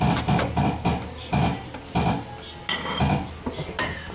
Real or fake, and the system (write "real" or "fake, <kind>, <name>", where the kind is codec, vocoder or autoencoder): real